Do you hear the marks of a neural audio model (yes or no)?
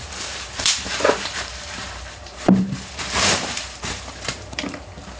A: yes